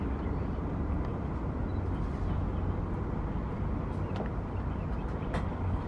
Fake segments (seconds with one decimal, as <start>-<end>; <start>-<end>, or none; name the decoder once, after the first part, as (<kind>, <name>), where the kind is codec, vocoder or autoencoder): none